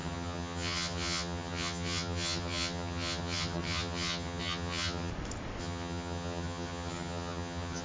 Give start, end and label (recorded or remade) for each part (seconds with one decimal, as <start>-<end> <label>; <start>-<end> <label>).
0.0-5.1 remade; 5.1-5.6 recorded; 5.6-7.8 remade